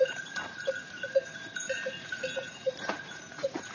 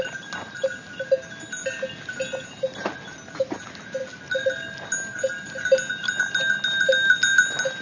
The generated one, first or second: first